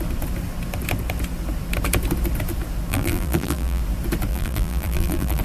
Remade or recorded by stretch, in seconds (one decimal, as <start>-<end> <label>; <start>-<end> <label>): 0.0-2.9 recorded; 2.9-3.8 remade; 3.8-4.3 recorded; 4.3-5.4 remade